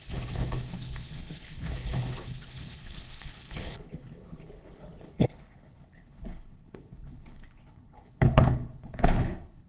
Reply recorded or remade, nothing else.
remade